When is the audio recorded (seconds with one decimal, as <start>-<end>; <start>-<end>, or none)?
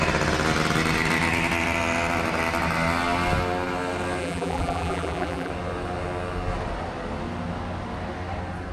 0.0-4.2; 5.5-8.7